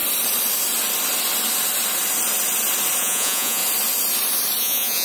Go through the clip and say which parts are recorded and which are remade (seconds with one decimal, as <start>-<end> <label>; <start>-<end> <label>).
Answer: 0.0-3.0 recorded; 3.0-3.6 remade; 3.6-4.6 recorded; 4.6-5.0 remade

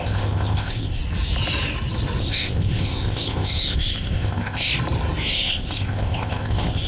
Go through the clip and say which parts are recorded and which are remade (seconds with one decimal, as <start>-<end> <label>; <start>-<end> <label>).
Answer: 0.0-1.0 remade; 1.0-2.2 recorded; 2.2-4.7 remade; 4.7-5.3 recorded; 5.3-6.9 remade

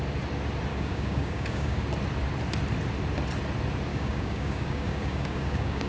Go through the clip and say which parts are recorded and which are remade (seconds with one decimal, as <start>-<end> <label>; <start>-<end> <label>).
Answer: 0.0-0.7 recorded; 0.7-1.8 remade; 1.8-3.9 recorded; 3.9-5.9 remade

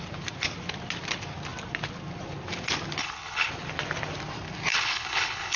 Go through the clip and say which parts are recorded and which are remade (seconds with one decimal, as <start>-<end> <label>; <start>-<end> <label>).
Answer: 0.0-3.0 recorded; 3.0-3.5 remade; 3.5-4.7 recorded; 4.7-5.6 remade

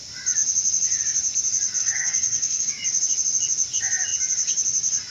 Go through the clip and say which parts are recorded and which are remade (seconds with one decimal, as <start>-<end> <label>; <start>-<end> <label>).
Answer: 0.0-1.8 recorded; 1.8-2.7 remade; 2.7-5.1 recorded

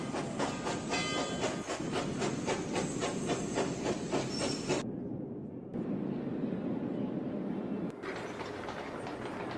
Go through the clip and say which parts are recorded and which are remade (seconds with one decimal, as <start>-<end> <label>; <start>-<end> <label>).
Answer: 0.0-9.6 recorded

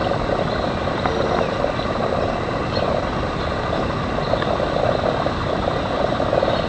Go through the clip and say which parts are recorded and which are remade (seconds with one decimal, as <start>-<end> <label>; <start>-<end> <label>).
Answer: 0.0-6.7 recorded